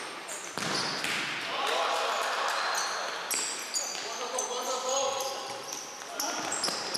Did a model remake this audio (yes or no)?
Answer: no